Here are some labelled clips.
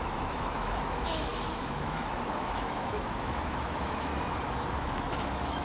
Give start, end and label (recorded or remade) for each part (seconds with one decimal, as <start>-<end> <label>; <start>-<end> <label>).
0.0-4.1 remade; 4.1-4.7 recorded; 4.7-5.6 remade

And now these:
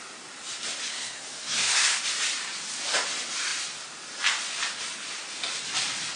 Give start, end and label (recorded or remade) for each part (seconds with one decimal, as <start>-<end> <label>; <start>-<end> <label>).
0.0-0.9 recorded; 0.9-2.0 remade; 2.0-6.2 recorded

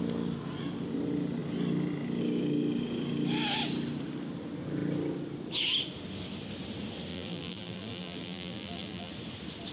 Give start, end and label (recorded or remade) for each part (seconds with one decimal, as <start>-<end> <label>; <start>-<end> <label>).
0.0-7.1 recorded; 7.1-9.1 remade; 9.1-9.7 recorded

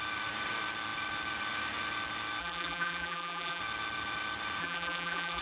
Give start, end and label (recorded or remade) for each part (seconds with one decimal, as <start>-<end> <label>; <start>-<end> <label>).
0.0-2.4 recorded; 2.4-3.6 remade; 3.6-4.6 recorded; 4.6-5.4 remade